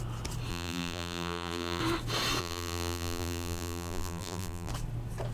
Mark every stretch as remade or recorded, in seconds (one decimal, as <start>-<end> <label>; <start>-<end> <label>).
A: 0.0-0.5 recorded; 0.5-1.8 remade; 1.8-2.4 recorded; 2.4-4.7 remade; 4.7-5.3 recorded